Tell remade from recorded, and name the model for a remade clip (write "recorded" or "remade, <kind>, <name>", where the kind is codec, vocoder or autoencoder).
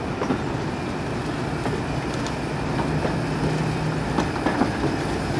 recorded